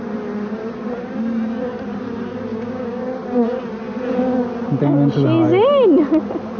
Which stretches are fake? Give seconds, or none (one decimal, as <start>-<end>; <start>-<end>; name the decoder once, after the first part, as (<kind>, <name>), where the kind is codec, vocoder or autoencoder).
2.5-3.0 (codec, DAC)